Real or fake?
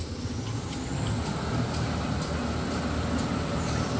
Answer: real